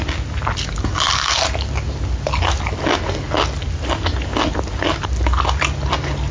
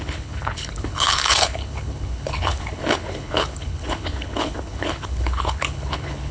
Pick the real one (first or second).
first